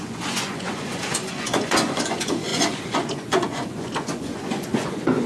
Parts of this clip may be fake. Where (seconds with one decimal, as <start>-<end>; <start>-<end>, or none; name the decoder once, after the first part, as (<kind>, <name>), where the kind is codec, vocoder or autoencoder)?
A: 0.0-5.3 (vocoder, Vocos)